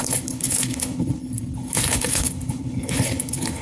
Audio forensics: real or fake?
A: fake